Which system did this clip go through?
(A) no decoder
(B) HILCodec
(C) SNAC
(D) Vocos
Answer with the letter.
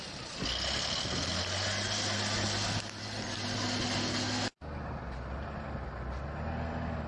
A